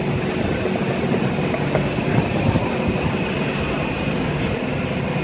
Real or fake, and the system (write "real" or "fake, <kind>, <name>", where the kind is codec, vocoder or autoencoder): real